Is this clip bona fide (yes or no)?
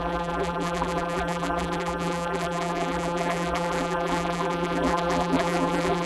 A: no